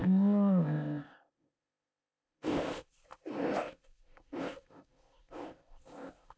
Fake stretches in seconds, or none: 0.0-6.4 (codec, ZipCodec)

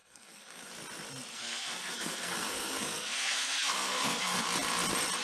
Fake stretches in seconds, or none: 0.0-0.7 (codec, SNAC); 1.3-4.4

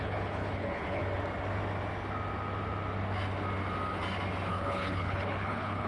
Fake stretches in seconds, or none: 0.0-1.0 (codec, HILCodec); 4.5-5.9

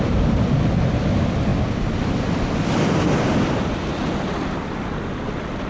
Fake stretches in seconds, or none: none

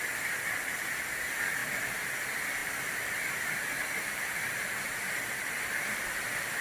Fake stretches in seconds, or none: 1.6-2.1 (vocoder, BigVGAN v2); 2.6-6.6

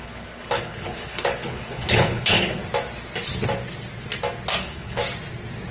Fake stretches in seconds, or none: 0.0-2.6 (codec, HILCodec); 4.6-5.0

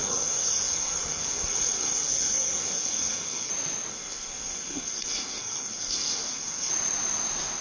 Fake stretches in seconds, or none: 0.0-3.5 (codec, SNAC); 3.9-6.7

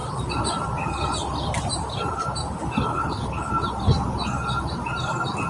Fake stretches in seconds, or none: 2.9-3.5 (codec, HILCodec)